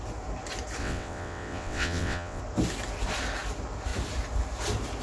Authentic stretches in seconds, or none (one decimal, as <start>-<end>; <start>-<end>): 0.0-0.8; 2.4-5.0